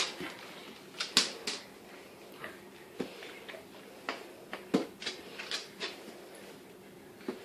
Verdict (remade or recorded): recorded